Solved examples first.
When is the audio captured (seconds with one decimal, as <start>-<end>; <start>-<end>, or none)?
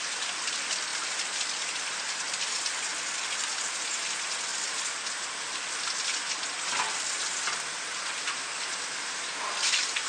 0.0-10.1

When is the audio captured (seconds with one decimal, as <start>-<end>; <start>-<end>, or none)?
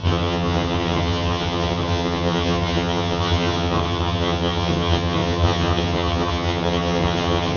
none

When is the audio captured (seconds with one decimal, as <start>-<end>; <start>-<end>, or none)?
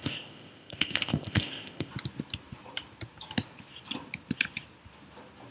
1.9-5.5